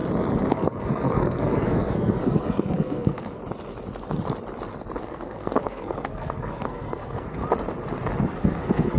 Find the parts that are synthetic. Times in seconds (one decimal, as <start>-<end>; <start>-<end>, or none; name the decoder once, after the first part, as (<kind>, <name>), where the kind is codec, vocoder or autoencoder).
0.5-3.4 (codec, SNAC); 5.0-7.4; 8.2-9.0